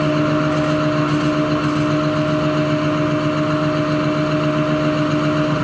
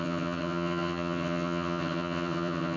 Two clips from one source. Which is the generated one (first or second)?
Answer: second